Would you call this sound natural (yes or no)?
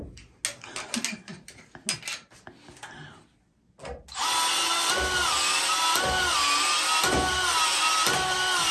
yes